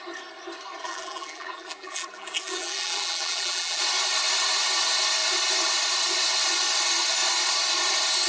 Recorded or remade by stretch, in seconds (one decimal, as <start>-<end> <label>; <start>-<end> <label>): 0.0-0.8 recorded; 0.8-3.8 remade; 3.8-8.3 recorded